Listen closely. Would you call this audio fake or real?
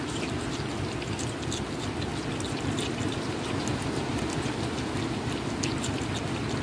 real